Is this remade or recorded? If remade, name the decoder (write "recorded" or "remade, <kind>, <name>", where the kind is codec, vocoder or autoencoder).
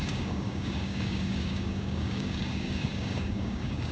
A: remade, codec, DAC